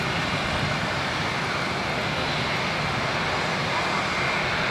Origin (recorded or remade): recorded